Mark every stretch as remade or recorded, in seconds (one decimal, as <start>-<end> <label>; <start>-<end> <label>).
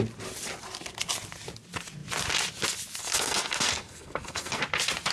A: 0.0-3.0 recorded; 3.0-4.6 remade; 4.6-5.1 recorded